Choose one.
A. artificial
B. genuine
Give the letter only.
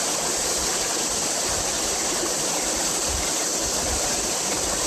B